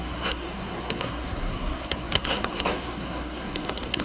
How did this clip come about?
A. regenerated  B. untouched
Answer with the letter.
A